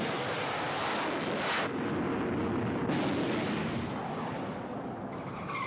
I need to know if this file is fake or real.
real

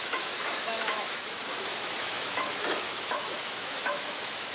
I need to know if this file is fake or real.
fake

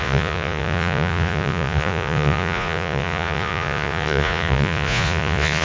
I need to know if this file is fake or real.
fake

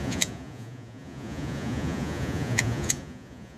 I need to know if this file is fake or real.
fake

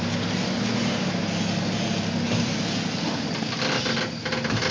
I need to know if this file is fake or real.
real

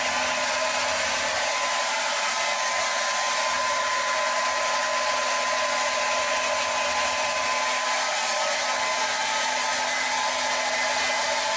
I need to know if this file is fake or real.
real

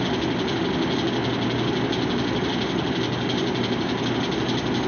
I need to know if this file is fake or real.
real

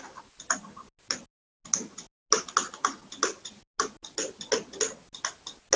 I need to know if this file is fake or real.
real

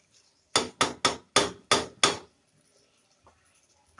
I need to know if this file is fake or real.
real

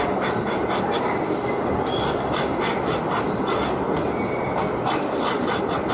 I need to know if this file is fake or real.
real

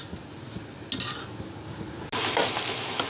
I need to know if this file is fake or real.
real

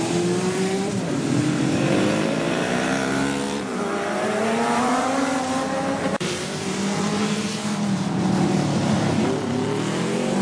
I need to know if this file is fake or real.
fake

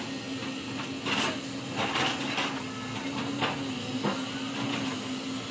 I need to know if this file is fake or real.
real